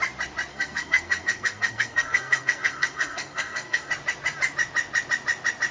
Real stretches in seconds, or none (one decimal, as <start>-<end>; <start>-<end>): 0.0-0.5; 3.9-5.7